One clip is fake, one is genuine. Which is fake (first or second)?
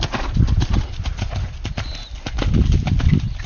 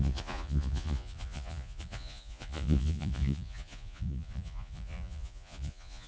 second